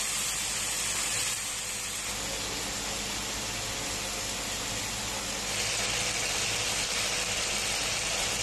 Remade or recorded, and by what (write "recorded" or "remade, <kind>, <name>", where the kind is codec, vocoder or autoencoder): recorded